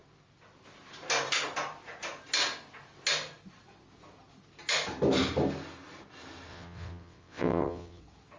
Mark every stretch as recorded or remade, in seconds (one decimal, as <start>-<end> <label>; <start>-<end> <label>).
0.0-6.5 recorded; 6.5-8.0 remade; 8.0-8.4 recorded